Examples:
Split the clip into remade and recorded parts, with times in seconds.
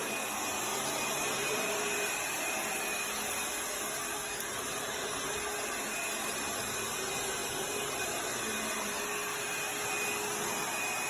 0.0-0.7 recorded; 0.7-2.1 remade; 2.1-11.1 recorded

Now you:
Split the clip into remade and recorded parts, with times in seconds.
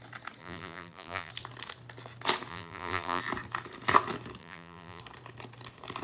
0.0-0.4 recorded; 0.4-1.3 remade; 1.3-2.5 recorded; 2.5-3.2 remade; 3.2-4.4 recorded; 4.4-5.0 remade; 5.0-6.0 recorded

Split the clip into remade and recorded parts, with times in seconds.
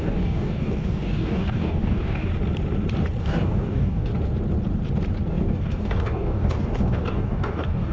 0.0-2.3 remade; 2.3-3.2 recorded; 3.2-4.1 remade; 4.1-5.3 recorded; 5.3-7.9 remade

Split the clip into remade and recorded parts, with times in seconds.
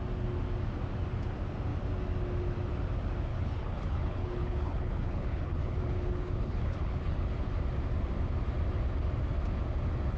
0.0-3.3 recorded; 3.3-7.3 remade; 7.3-10.2 recorded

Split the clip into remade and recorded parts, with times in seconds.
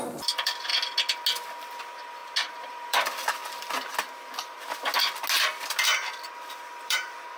0.0-0.7 remade; 0.7-1.8 recorded; 1.8-2.2 remade; 2.2-2.7 recorded; 2.7-3.4 remade; 3.4-5.7 recorded; 5.7-7.4 remade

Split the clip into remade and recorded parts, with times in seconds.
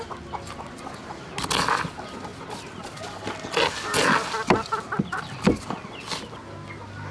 0.0-7.1 recorded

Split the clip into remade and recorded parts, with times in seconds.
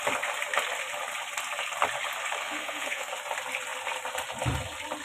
0.0-2.4 recorded; 2.4-3.1 remade; 3.1-5.0 recorded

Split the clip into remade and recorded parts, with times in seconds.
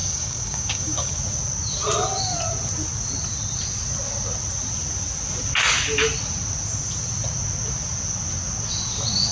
0.0-1.1 remade; 1.1-9.3 recorded